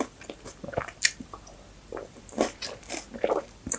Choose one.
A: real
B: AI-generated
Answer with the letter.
B